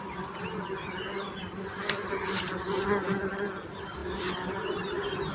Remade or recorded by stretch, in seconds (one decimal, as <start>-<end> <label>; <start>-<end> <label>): 0.0-4.0 remade; 4.0-4.8 recorded; 4.8-5.3 remade